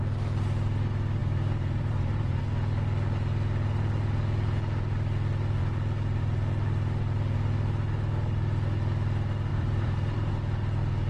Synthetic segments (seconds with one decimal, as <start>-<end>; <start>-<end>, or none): 1.2-2.4; 9.5-10.3